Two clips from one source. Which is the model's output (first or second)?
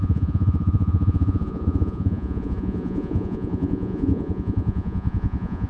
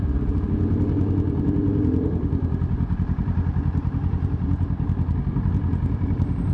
first